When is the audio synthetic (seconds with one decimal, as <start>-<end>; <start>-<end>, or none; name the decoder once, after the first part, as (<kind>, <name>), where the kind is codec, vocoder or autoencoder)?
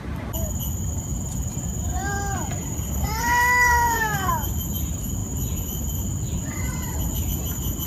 3.0-4.3 (codec, SNAC)